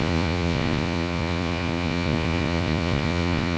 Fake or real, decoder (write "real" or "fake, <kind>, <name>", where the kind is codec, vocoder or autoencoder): fake, vocoder, Vocos